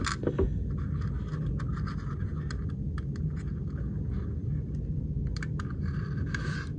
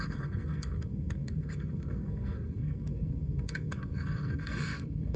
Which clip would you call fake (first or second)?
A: second